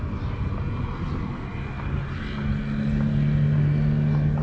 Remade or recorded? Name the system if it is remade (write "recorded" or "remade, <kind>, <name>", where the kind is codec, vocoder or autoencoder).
recorded